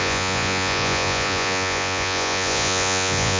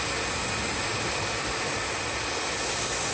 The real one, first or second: second